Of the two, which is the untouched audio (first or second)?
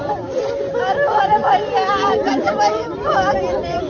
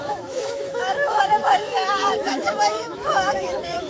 first